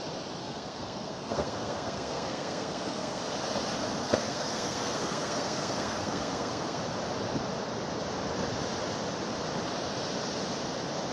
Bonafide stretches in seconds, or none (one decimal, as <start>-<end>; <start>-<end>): 0.0-0.4; 3.2-4.0; 6.8-11.1

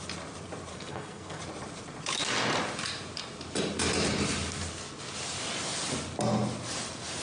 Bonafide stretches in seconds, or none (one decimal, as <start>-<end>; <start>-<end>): 0.0-0.7; 1.4-7.2